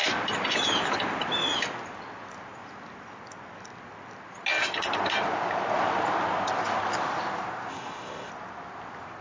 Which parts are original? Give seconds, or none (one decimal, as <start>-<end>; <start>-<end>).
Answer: 0.0-7.7; 8.3-9.2